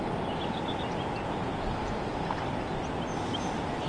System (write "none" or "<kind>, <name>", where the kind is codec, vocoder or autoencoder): none